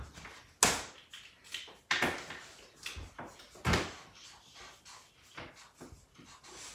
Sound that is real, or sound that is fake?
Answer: real